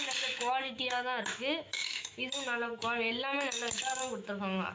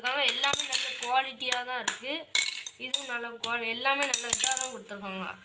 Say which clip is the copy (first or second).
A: first